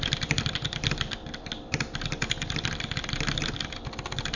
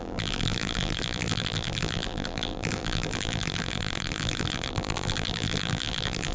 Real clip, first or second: first